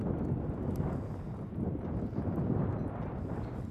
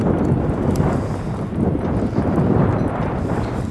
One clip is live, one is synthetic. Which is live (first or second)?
first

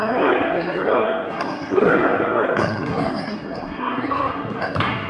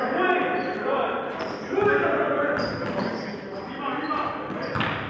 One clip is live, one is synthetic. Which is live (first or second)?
second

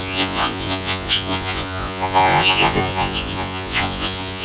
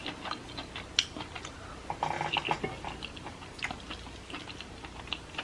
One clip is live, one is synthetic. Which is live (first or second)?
second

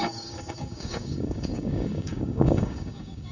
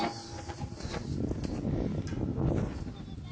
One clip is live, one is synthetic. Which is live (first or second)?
second